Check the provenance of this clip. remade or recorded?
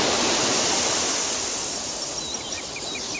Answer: recorded